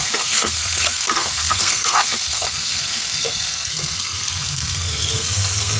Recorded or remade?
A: remade